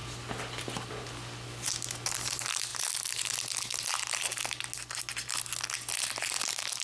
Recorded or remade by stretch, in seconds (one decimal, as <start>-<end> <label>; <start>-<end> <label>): 0.0-6.8 recorded